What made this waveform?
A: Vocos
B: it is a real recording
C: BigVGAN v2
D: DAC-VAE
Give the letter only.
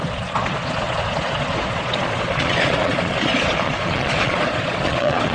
A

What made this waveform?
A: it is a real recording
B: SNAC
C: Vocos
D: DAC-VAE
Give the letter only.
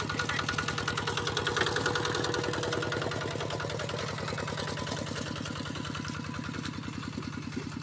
A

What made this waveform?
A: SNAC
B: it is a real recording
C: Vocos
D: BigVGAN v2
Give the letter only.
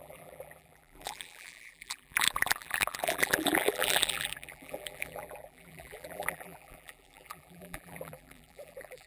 D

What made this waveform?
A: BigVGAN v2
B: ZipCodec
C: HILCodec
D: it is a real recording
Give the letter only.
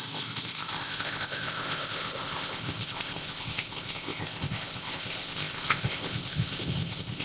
B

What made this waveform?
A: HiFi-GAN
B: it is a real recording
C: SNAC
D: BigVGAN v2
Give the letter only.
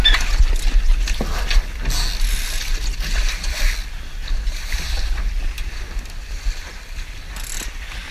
B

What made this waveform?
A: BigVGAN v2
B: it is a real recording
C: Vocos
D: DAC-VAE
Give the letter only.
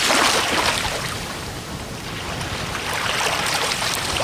B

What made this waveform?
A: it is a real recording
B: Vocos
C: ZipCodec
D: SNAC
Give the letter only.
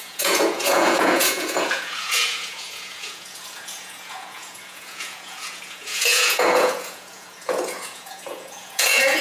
B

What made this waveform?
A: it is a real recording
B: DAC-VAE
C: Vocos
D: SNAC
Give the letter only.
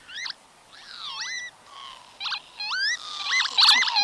A